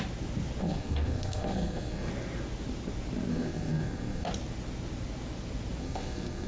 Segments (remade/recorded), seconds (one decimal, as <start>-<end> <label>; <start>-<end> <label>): 0.0-0.6 recorded; 0.6-2.1 remade; 2.1-3.3 recorded; 3.3-4.3 remade; 4.3-5.8 recorded; 5.8-6.5 remade

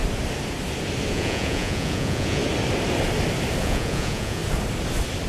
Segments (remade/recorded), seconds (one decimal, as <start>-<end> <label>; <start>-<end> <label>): 0.0-1.1 recorded; 1.1-2.4 remade; 2.4-3.6 recorded; 3.6-4.4 remade; 4.4-5.3 recorded